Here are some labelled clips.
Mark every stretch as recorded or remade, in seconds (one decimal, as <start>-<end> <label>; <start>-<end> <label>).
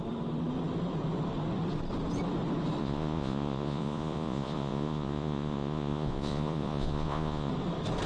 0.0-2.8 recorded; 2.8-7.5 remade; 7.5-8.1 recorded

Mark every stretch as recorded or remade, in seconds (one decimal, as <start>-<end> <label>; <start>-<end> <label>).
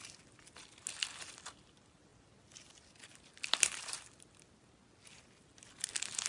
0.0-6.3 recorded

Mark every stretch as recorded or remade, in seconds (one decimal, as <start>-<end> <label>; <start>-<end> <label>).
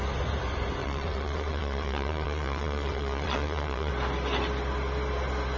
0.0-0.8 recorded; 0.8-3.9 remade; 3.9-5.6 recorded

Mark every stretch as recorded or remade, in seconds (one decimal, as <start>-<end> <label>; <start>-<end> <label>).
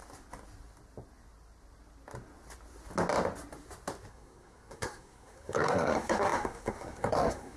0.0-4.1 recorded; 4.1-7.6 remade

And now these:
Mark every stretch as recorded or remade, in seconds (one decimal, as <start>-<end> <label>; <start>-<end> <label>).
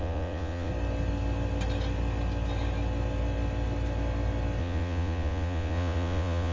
0.0-0.7 remade; 0.7-4.6 recorded; 4.6-6.5 remade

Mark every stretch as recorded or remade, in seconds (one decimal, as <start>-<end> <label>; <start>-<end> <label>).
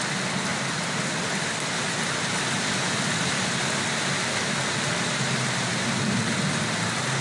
0.0-7.2 recorded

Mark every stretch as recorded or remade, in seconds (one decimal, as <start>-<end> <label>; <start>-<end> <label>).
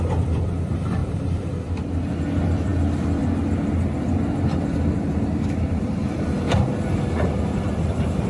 0.0-1.0 recorded; 1.0-1.5 remade; 1.5-4.7 recorded; 4.7-7.9 remade; 7.9-8.3 recorded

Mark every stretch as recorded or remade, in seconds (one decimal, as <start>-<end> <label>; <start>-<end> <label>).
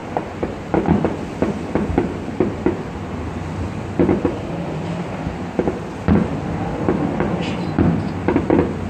0.0-8.9 recorded